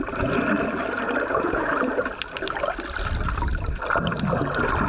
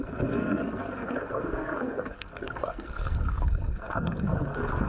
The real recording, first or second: first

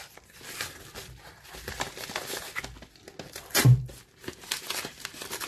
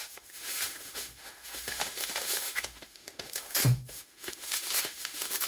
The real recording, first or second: first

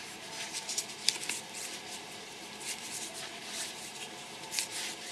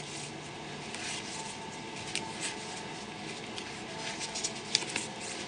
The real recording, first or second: second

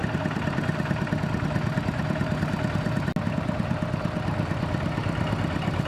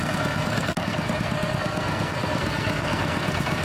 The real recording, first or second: first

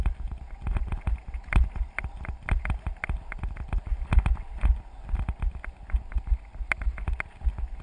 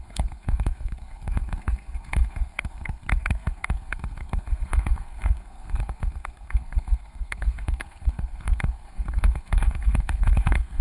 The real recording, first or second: first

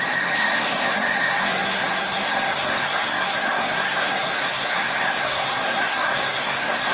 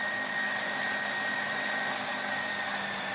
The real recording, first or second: second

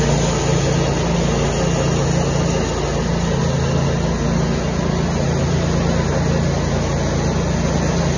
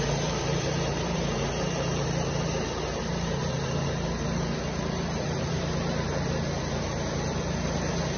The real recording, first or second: first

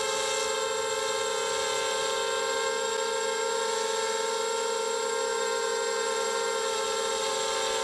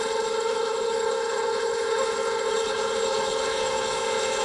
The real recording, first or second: first